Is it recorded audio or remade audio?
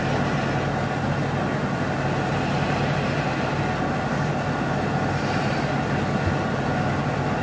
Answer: recorded